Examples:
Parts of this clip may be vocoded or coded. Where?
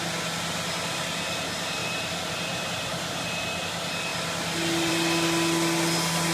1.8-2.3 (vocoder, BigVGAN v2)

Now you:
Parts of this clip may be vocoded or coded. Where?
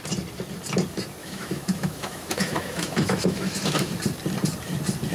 1.2-3.9 (autoencoder, DAC-VAE)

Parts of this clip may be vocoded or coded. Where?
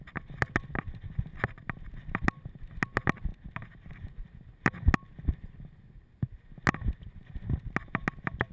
none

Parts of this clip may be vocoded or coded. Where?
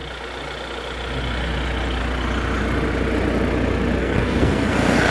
4.0-5.1 (codec, SNAC)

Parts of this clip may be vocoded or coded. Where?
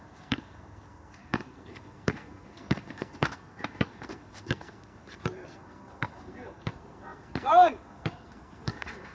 0.0-9.1 (codec, SNAC)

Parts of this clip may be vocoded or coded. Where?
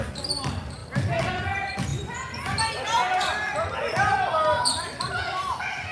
none